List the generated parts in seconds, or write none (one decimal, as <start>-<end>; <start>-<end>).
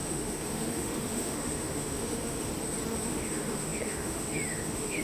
0.0-2.5; 3.1-5.0